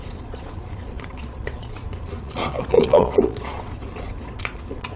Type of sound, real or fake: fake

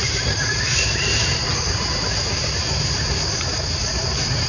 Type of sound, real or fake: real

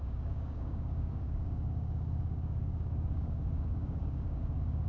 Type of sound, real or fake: fake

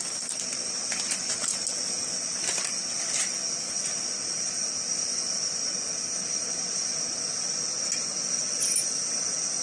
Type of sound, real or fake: real